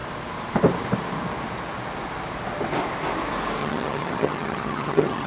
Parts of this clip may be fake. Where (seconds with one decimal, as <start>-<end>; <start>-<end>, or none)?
3.6-5.3